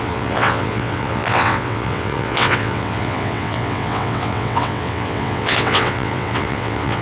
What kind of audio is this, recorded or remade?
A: remade